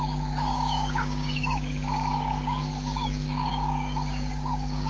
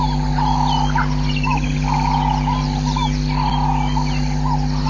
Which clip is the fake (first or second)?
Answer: first